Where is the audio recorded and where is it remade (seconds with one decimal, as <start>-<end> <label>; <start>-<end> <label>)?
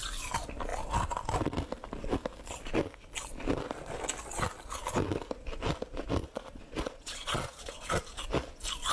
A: 0.0-6.2 recorded; 6.2-7.9 remade; 7.9-8.9 recorded